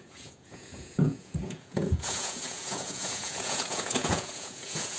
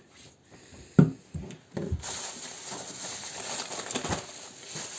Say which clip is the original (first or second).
second